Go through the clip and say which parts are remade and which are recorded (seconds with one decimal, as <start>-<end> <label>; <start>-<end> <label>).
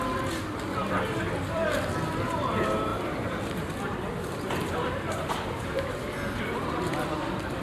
0.0-0.8 recorded; 0.8-1.9 remade; 1.9-2.9 recorded; 2.9-7.6 remade